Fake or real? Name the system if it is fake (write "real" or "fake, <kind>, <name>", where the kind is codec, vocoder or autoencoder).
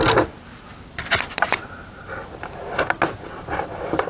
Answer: real